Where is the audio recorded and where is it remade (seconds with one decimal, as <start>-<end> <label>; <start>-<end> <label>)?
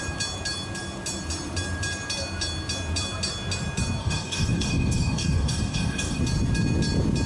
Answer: 0.0-4.0 recorded; 4.0-6.2 remade; 6.2-7.3 recorded